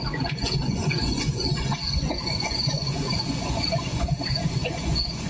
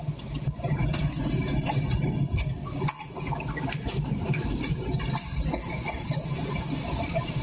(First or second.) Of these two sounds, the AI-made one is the first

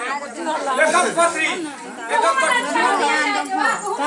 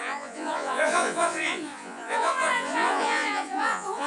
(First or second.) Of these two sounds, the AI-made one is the second